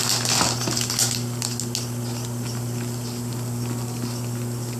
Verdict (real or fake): real